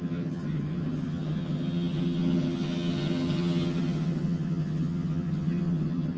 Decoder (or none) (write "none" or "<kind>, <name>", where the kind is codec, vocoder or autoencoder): vocoder, HiFi-GAN